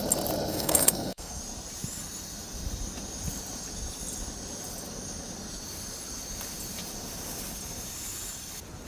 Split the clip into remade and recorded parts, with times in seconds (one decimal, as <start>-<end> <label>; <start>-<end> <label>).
0.0-0.5 recorded; 0.5-1.4 remade; 1.4-8.9 recorded